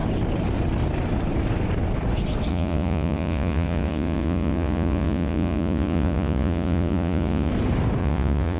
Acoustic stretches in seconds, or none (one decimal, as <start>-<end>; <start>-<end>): 0.0-2.5; 7.5-8.0